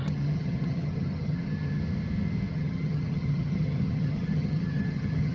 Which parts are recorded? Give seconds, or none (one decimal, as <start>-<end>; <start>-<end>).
1.8-2.5